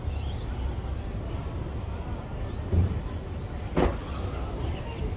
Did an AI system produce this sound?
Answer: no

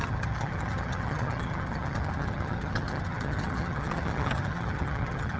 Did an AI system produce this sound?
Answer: yes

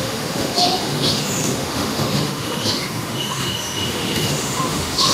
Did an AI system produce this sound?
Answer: yes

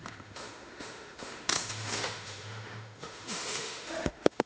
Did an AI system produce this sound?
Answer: yes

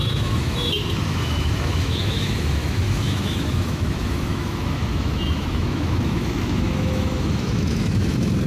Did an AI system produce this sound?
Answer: yes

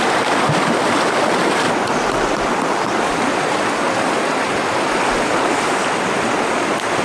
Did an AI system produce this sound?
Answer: no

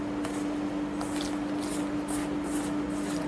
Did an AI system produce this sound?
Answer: no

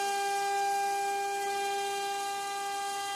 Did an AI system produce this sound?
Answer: no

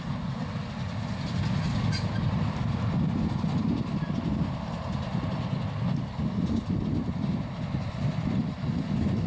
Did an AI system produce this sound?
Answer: no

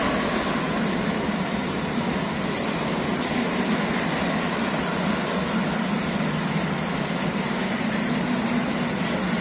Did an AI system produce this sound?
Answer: no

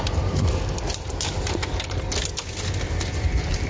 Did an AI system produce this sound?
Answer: no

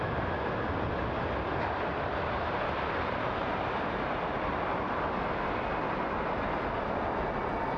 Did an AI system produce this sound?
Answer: no